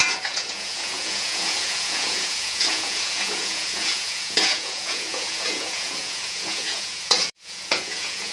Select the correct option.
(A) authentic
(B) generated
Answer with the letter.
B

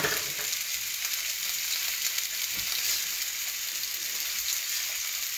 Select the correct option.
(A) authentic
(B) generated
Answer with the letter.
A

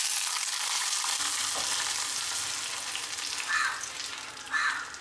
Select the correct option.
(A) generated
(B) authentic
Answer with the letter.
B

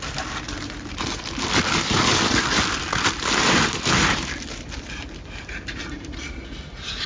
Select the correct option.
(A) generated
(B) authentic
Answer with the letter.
A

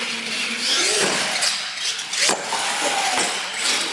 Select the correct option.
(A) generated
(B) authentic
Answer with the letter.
B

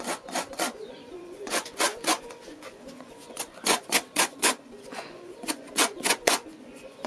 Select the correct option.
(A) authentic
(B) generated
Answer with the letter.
B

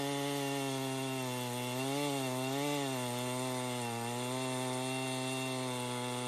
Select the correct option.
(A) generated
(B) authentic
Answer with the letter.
B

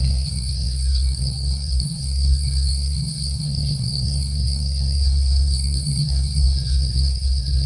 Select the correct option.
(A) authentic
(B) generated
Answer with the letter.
B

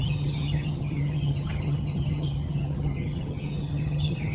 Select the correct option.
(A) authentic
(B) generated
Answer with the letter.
B